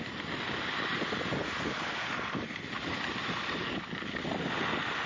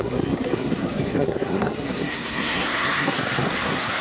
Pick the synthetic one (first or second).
second